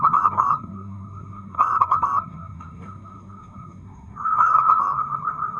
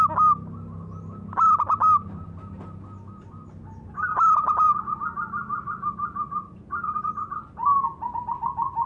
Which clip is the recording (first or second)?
second